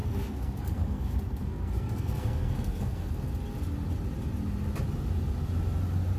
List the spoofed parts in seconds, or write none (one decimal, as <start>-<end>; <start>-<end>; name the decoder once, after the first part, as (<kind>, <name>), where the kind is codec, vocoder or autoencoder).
0.0-3.2 (codec, SNAC)